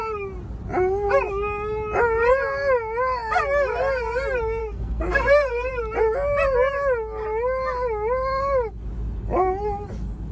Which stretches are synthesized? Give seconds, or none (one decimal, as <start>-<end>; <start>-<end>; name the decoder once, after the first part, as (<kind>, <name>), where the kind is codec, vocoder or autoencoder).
4.6-5.7 (codec, SNAC)